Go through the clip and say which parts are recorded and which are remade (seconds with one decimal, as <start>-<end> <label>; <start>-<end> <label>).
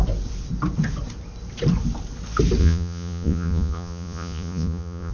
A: 0.0-2.6 recorded; 2.6-5.1 remade